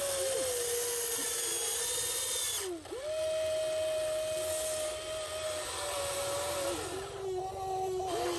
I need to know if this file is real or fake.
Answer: real